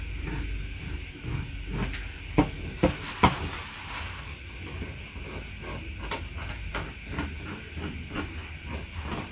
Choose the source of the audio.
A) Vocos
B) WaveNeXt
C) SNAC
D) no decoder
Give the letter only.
D